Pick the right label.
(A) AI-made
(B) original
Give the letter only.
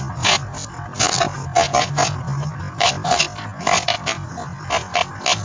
B